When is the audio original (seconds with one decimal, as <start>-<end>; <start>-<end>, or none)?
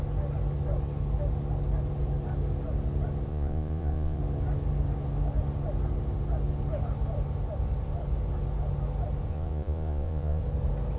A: 0.0-3.3; 4.2-9.3; 10.4-11.0